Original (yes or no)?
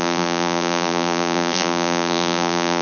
no